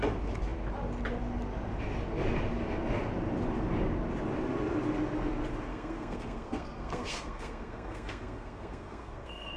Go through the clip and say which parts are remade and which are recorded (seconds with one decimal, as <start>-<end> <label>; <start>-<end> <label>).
0.0-5.7 recorded; 5.7-9.6 remade